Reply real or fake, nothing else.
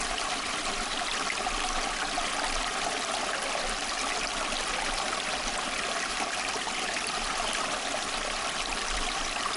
real